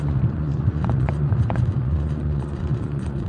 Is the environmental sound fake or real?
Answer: fake